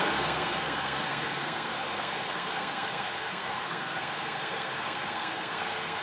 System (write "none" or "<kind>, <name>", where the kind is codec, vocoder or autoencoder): codec, SNAC